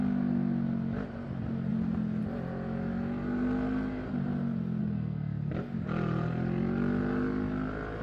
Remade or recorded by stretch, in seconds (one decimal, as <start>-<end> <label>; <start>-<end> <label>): 0.0-4.8 recorded; 4.8-5.5 remade; 5.5-8.0 recorded